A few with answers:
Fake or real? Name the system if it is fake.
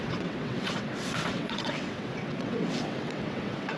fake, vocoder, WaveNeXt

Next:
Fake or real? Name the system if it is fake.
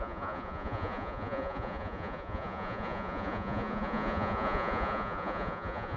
fake, vocoder, Vocos